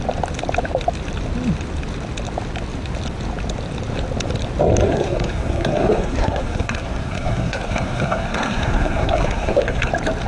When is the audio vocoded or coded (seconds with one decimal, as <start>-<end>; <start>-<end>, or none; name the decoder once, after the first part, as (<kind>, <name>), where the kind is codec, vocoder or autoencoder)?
4.9-9.9 (codec, SNAC)